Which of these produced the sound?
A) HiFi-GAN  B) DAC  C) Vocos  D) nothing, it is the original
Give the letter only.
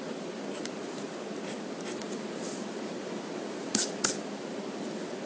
D